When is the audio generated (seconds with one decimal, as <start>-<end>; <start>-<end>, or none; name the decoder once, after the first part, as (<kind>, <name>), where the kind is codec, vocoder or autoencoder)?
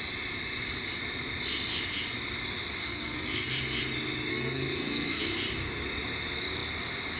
2.8-3.5 (codec, SNAC); 4.3-5.2